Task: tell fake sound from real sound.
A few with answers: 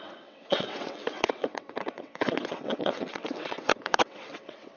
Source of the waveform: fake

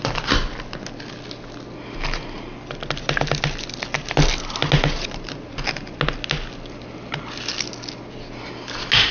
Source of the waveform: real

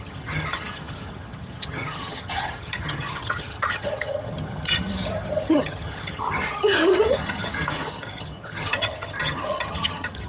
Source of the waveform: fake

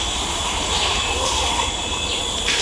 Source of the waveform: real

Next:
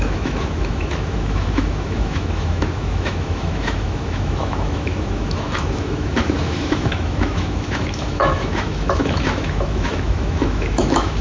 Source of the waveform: fake